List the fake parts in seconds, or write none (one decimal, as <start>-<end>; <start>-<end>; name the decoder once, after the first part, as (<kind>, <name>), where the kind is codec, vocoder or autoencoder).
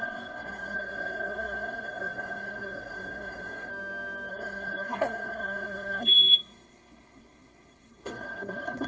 0.0-3.7 (codec, SNAC); 4.3-8.9